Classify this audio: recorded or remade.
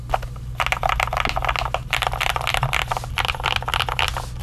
recorded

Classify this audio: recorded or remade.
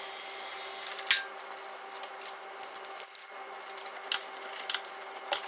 recorded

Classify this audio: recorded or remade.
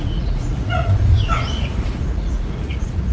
remade